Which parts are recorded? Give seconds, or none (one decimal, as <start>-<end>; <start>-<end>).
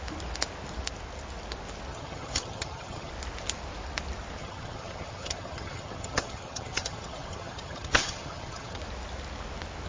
0.0-1.9; 3.1-4.4; 8.8-9.9